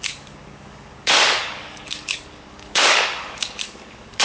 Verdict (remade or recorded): remade